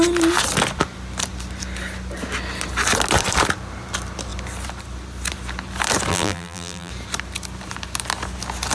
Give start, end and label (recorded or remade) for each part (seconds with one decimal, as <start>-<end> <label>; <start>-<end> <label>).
0.0-6.1 recorded; 6.1-6.9 remade; 6.9-8.7 recorded